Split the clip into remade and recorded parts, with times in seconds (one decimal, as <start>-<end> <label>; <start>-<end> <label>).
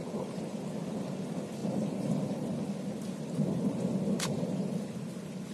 0.0-1.6 recorded; 1.6-4.9 remade; 4.9-5.5 recorded